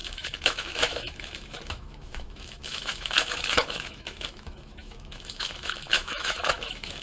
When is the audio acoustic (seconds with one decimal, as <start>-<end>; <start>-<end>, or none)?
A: none